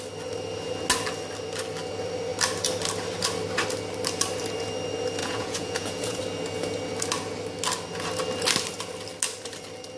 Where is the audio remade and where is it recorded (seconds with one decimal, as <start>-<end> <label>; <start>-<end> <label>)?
0.0-5.2 recorded; 5.2-6.2 remade; 6.2-10.0 recorded